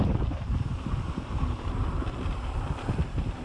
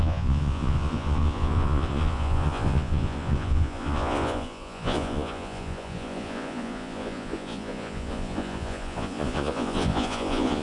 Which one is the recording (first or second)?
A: first